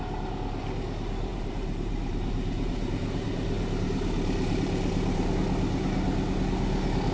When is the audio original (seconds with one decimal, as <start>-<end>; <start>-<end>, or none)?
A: 0.0-1.3; 5.3-7.1